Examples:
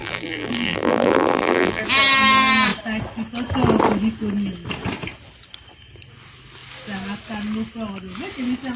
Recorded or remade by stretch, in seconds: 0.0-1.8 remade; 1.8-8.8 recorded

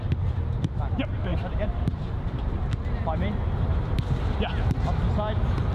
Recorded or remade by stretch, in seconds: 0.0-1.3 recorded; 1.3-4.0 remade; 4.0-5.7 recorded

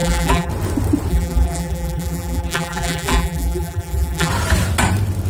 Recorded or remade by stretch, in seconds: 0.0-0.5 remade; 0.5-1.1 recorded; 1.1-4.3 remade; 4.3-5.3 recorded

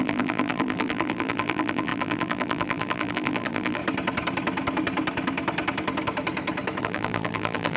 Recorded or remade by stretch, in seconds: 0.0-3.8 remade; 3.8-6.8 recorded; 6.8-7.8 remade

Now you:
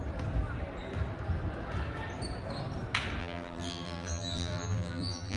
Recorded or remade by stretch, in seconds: 0.0-3.2 recorded; 3.2-5.4 remade

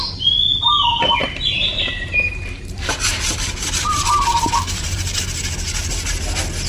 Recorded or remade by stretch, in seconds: 0.0-1.2 recorded; 1.2-5.2 remade; 5.2-6.7 recorded

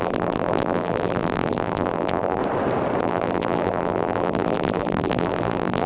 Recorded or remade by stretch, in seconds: 0.0-2.4 remade; 2.4-3.0 recorded; 3.0-5.9 remade